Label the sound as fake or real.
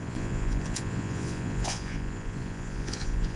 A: fake